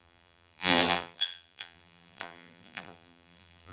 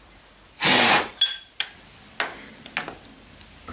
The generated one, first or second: first